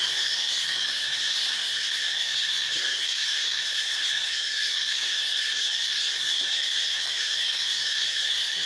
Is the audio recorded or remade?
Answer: remade